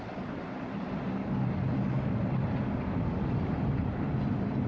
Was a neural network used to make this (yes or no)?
no